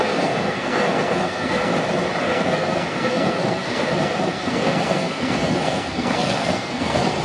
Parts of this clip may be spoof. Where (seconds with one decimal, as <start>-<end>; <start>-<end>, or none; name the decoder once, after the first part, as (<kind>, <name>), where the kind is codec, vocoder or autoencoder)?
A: 0.0-1.7 (codec, SNAC); 2.2-7.2